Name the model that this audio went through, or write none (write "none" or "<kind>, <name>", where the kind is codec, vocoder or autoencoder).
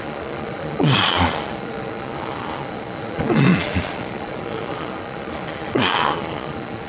vocoder, Vocos